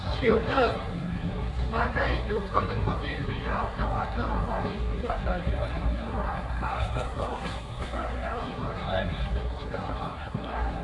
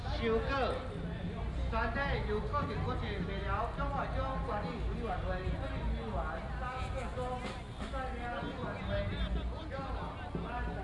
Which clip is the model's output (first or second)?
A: first